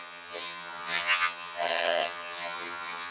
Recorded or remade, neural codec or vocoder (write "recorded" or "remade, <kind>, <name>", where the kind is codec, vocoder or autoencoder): remade, vocoder, HiFi-GAN